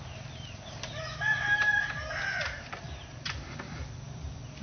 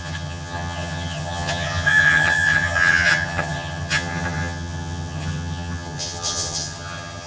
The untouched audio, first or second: first